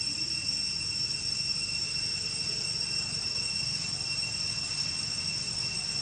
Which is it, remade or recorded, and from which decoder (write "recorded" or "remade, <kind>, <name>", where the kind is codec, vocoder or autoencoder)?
recorded